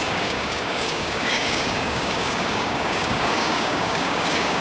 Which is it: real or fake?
fake